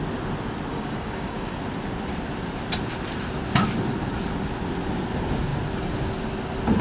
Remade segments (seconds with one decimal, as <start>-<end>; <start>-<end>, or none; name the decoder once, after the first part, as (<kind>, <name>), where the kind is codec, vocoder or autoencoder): 0.7-1.5 (codec, DAC)